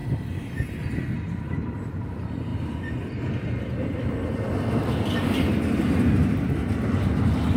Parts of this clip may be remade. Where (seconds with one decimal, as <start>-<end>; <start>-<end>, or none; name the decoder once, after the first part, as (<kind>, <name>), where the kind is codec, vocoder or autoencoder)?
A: none